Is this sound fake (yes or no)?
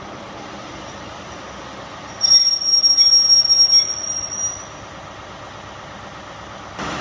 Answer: no